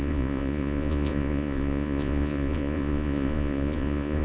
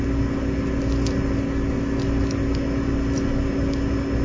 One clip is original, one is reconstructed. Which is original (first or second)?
second